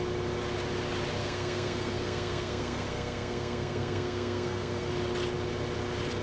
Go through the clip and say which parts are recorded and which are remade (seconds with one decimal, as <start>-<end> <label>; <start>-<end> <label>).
0.0-1.2 recorded; 1.2-4.9 remade; 4.9-6.2 recorded